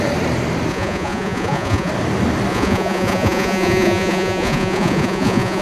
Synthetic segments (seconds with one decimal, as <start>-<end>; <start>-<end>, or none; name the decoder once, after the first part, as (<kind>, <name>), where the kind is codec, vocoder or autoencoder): 0.7-1.9 (vocoder, Vocos); 2.5-5.6